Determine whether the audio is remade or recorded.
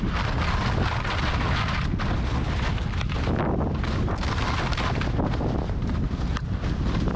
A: recorded